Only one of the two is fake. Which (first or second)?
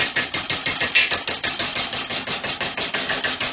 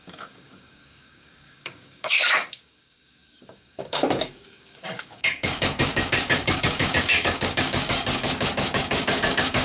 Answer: second